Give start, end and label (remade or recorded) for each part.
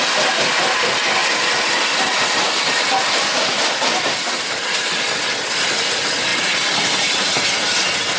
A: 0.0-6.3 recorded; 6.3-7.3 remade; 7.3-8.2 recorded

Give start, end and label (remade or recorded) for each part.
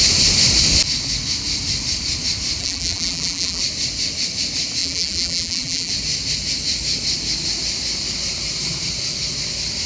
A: 0.0-2.6 recorded; 2.6-3.6 remade; 3.6-4.8 recorded; 4.8-5.9 remade; 5.9-9.9 recorded